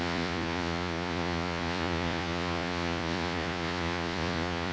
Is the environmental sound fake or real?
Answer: fake